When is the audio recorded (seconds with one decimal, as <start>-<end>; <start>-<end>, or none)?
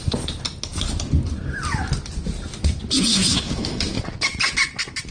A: 0.0-3.1; 3.8-5.1